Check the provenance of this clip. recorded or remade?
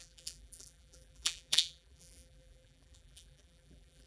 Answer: remade